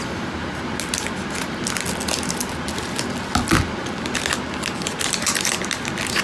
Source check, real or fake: real